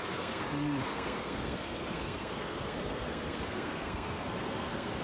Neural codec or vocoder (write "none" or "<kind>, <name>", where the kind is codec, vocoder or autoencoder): codec, SNAC